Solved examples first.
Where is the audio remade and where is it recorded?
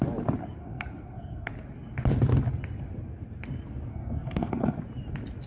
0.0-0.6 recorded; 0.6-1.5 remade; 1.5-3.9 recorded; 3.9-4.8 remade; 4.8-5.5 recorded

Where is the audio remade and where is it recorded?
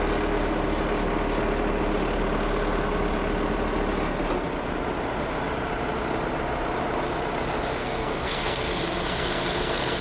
0.0-7.8 recorded; 7.8-10.0 remade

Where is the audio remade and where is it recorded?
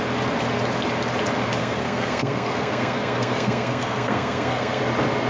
0.0-1.6 recorded; 1.6-4.8 remade; 4.8-5.3 recorded